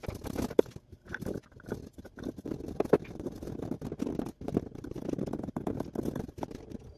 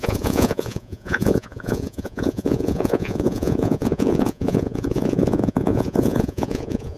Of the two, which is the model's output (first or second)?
second